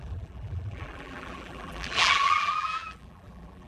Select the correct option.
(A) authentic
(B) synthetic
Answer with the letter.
B